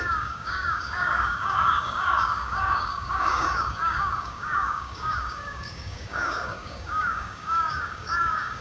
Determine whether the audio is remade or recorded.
remade